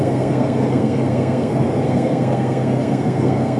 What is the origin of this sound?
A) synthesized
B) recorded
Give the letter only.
A